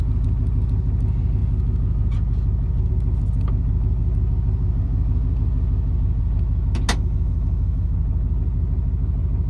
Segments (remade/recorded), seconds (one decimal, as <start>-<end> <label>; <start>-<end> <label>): 0.0-6.9 recorded; 6.9-7.9 remade; 7.9-9.5 recorded